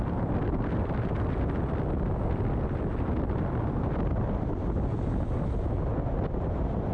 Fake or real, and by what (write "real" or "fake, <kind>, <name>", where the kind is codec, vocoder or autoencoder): real